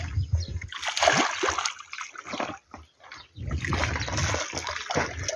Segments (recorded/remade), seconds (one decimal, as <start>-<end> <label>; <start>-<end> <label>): 0.0-5.4 recorded

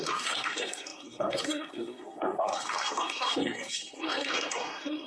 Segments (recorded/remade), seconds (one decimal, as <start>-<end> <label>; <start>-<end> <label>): 0.0-5.1 remade

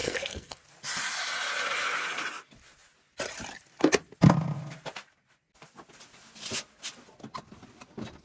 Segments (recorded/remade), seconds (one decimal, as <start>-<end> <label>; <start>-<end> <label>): 0.0-0.6 remade; 0.6-8.2 recorded

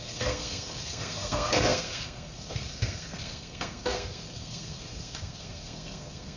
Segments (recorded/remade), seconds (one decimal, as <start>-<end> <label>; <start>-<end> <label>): 0.0-6.4 remade

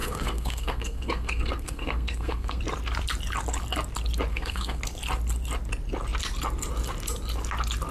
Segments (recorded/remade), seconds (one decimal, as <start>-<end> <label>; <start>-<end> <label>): 0.0-2.6 remade; 2.6-4.3 recorded; 4.3-4.8 remade; 4.8-7.9 recorded

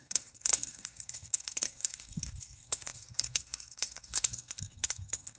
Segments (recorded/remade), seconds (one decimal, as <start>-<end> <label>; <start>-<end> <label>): 0.0-5.4 remade

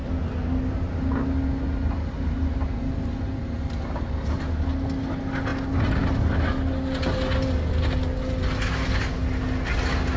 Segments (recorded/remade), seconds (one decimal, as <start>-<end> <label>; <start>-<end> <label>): 0.0-10.2 recorded